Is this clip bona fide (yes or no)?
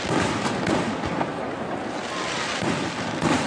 yes